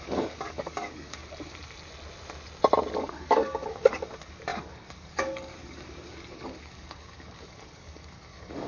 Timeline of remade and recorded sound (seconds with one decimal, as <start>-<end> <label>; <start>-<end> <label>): 0.0-1.2 remade; 1.2-3.0 recorded; 3.0-8.7 remade